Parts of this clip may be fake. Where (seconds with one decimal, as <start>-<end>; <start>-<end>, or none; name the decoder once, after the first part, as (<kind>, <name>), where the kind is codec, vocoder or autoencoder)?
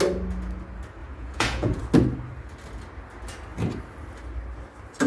1.0-1.8 (vocoder, Vocos)